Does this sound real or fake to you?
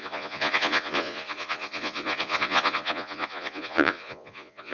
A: fake